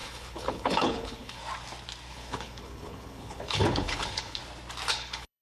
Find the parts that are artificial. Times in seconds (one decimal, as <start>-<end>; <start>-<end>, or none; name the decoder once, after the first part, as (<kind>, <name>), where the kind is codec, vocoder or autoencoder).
0.0-1.4 (codec, HILCodec); 2.1-4.4; 4.9-5.4